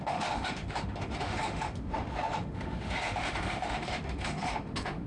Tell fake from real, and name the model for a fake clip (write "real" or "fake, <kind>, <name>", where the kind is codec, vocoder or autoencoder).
fake, autoencoder, DAC-VAE